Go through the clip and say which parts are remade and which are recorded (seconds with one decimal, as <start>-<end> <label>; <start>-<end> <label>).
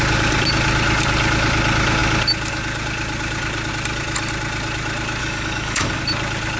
0.0-5.2 recorded; 5.2-6.0 remade; 6.0-6.6 recorded